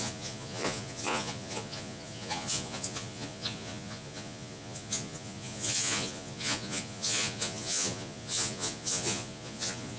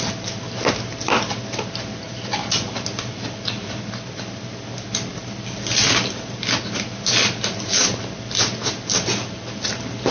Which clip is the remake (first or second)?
first